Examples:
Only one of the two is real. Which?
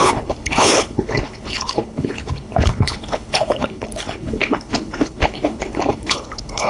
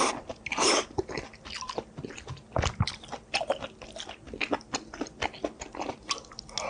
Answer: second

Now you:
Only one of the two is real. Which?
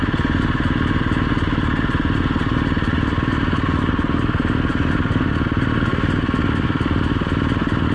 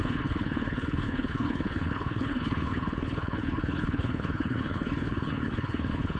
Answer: first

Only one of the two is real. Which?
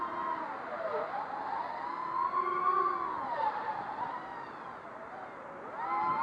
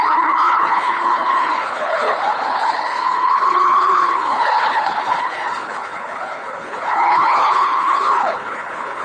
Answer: first